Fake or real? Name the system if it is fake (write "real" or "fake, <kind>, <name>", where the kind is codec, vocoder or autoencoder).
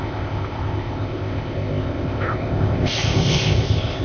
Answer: fake, codec, ZipCodec